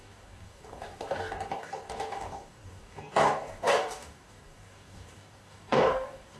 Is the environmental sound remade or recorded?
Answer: remade